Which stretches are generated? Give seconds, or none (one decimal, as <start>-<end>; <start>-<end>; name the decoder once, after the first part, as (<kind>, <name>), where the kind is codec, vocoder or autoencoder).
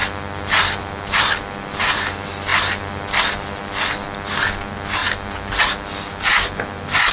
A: none